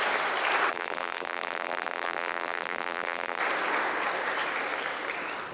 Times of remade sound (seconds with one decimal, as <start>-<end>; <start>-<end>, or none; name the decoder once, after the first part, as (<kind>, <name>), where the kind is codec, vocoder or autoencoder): 0.7-3.4 (vocoder, BigVGAN v2)